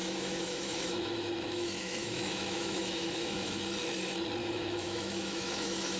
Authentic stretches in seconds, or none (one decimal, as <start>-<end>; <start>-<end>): 3.6-4.4